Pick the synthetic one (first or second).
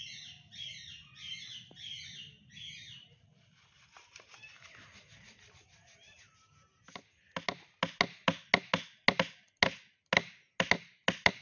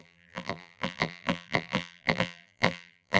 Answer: second